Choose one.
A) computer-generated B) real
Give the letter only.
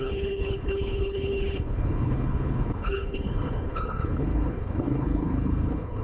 A